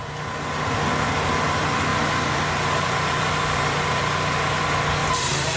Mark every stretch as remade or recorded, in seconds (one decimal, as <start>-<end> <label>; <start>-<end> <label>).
0.0-1.9 recorded; 1.9-3.9 remade; 3.9-5.0 recorded; 5.0-5.6 remade